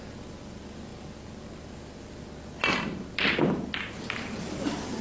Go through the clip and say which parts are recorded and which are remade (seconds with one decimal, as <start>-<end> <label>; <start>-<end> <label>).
0.0-5.0 recorded